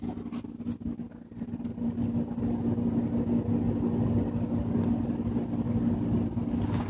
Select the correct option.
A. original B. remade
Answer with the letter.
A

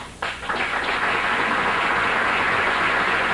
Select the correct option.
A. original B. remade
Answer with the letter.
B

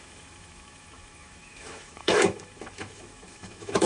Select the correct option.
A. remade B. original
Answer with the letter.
A